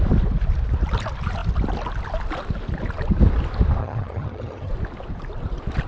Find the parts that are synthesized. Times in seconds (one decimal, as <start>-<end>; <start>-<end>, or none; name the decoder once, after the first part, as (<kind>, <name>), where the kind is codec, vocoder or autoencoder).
3.8-4.7 (vocoder, HiFi-GAN)